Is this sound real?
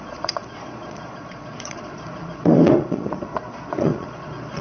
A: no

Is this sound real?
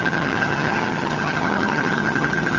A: no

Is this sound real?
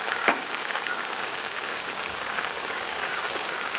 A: no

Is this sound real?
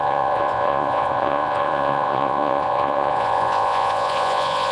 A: no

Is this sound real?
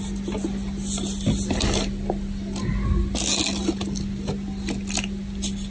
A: yes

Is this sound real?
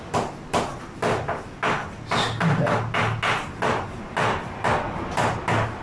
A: yes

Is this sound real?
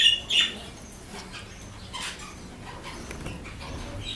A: yes